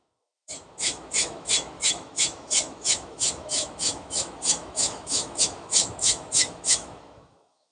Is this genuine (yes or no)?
no